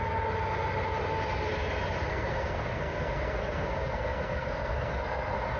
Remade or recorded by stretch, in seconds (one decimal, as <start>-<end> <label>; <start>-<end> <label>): 0.0-2.1 recorded; 2.1-5.6 remade